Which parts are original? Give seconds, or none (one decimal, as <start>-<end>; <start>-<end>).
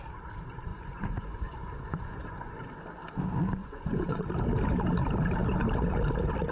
0.0-0.7; 2.5-3.6; 4.2-6.5